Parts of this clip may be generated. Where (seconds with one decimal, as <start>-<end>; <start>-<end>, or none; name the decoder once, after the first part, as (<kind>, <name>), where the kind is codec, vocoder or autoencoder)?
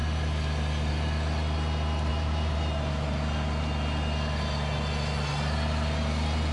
2.1-2.9 (vocoder, BigVGAN v2)